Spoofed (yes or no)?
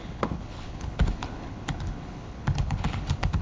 yes